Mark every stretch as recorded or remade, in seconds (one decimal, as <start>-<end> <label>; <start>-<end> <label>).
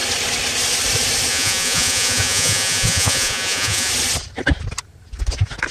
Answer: 0.0-1.3 recorded; 1.3-3.9 remade; 3.9-5.7 recorded